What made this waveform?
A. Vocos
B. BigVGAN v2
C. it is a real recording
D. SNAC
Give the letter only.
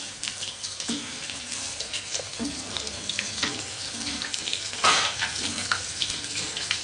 D